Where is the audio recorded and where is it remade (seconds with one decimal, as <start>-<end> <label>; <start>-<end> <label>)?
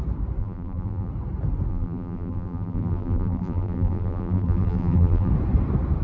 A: 0.0-0.4 recorded; 0.4-1.1 remade; 1.1-1.7 recorded; 1.7-5.3 remade; 5.3-6.0 recorded